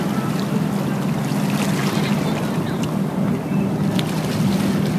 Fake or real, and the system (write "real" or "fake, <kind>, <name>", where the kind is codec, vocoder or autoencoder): real